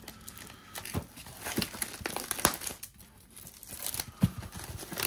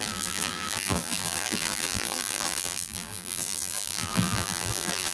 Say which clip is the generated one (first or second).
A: second